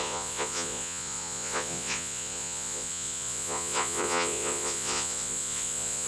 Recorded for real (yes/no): no